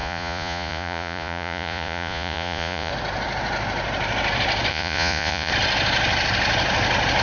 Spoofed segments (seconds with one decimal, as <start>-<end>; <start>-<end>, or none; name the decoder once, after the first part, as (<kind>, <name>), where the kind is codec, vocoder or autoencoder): 0.0-2.9 (vocoder, Vocos); 4.7-5.5